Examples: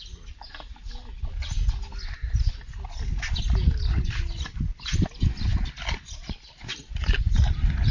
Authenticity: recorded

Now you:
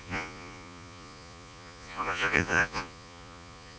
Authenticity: remade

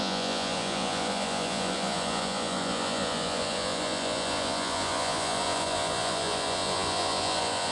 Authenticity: remade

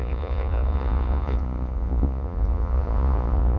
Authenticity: remade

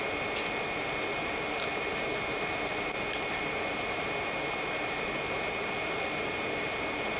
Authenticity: recorded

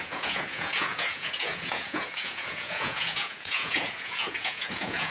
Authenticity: remade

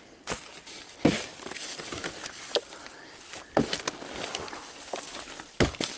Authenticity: recorded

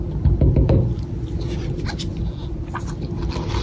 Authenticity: recorded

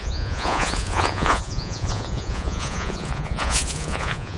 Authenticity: remade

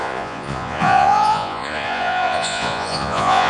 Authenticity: remade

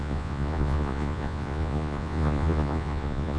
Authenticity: remade